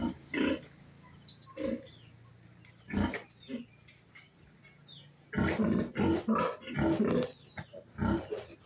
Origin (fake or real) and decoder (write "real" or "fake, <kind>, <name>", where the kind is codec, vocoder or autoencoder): real